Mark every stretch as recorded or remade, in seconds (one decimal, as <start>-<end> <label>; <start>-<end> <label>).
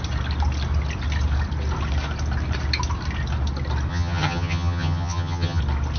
0.0-3.9 recorded; 3.9-5.6 remade; 5.6-6.0 recorded